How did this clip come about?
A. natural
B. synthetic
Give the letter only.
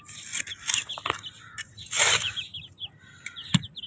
A